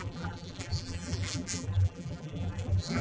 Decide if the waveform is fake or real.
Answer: fake